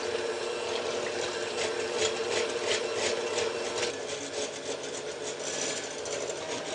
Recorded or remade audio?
recorded